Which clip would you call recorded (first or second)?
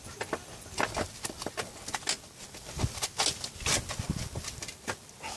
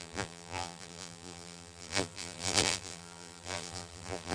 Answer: first